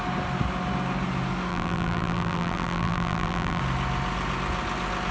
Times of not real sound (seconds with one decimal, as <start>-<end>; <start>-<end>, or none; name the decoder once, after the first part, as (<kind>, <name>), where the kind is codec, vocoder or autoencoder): 1.5-3.6 (vocoder, BigVGAN v2)